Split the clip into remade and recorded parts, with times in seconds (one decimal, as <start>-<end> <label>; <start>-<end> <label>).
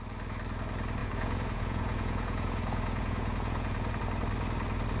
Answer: 0.0-1.0 recorded; 1.0-4.0 remade; 4.0-5.0 recorded